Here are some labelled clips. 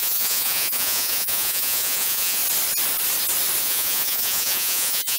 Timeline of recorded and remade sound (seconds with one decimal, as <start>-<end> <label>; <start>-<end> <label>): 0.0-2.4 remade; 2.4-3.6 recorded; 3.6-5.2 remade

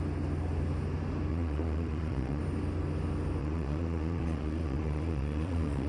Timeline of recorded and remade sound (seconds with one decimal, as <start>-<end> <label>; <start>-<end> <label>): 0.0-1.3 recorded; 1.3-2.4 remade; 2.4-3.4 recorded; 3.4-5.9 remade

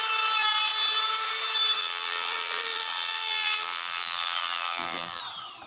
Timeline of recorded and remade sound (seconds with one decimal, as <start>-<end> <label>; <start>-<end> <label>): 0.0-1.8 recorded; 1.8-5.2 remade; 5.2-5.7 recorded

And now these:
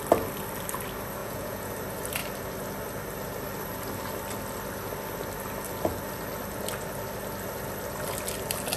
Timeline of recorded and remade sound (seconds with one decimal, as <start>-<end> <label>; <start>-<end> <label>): 0.0-1.2 recorded; 1.2-1.7 remade; 1.7-8.8 recorded